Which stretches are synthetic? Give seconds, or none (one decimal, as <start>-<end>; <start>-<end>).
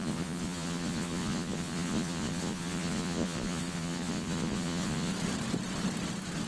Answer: 0.0-5.1